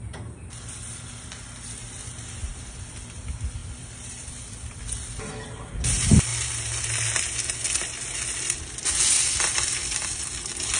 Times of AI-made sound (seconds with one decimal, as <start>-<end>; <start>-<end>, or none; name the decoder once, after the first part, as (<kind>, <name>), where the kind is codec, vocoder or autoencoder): 3.6-4.8 (vocoder, BigVGAN v2)